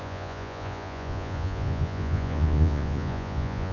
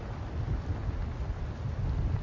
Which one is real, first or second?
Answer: second